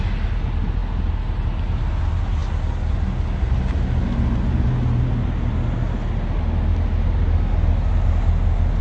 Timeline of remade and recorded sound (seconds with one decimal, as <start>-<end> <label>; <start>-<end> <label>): 0.0-8.8 recorded